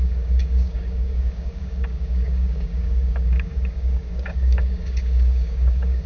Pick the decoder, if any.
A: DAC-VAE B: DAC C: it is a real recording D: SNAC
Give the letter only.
B